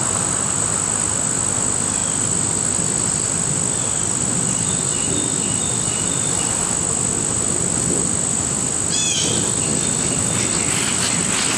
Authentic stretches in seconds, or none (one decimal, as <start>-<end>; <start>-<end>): 0.0-11.6